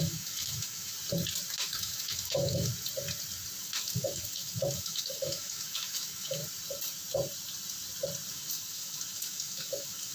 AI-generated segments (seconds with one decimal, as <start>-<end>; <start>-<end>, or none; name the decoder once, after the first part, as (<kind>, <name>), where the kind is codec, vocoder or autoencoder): 0.0-0.9 (autoencoder, DAC-VAE); 1.6-2.7; 3.6-6.4; 8.3-10.1

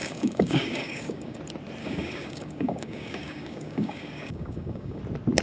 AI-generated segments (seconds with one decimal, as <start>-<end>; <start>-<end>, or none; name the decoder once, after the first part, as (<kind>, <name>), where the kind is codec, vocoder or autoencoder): 0.0-1.4 (codec, DAC); 1.8-5.0

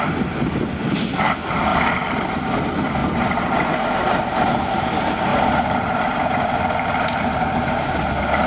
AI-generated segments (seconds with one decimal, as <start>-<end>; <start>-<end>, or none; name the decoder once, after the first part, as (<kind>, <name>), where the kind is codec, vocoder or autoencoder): 1.7-2.5 (vocoder, BigVGAN v2); 3.0-4.6; 5.3-7.7